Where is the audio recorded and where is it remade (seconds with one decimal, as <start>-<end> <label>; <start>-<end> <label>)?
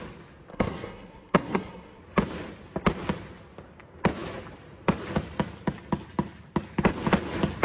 0.0-0.5 recorded; 0.5-2.0 remade; 2.0-7.6 recorded